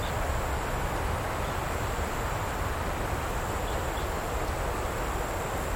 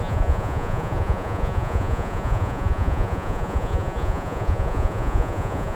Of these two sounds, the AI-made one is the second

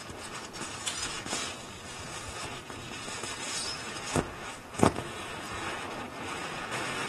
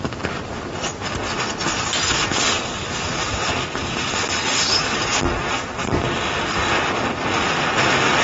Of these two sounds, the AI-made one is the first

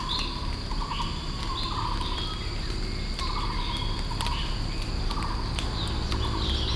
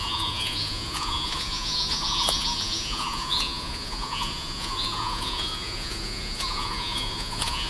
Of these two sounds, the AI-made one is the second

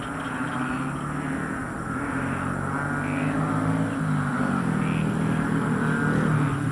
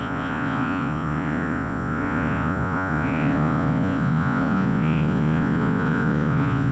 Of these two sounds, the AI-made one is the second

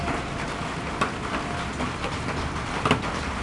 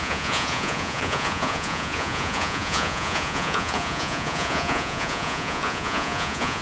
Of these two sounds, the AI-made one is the second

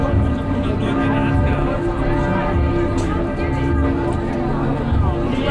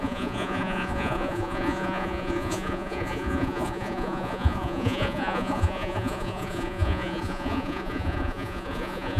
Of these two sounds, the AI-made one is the second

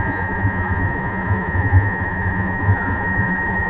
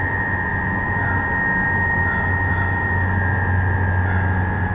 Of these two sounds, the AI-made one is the first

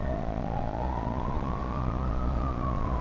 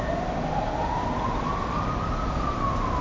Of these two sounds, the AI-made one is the first